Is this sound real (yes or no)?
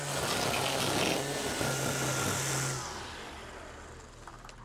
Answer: yes